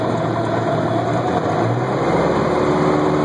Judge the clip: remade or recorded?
recorded